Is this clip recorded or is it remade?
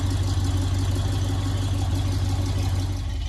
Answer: recorded